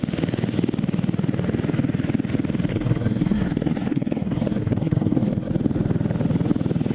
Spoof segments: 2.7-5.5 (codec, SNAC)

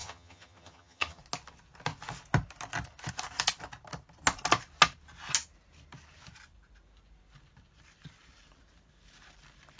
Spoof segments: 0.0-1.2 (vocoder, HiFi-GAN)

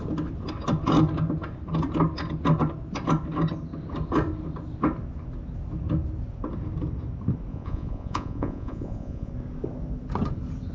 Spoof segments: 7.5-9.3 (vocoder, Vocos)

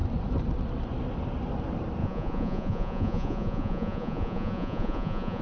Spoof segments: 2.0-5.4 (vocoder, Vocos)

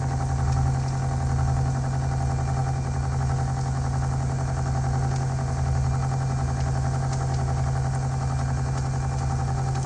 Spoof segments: none